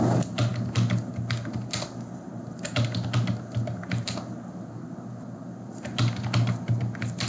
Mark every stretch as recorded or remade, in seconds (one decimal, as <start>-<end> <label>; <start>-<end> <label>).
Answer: 0.0-7.3 recorded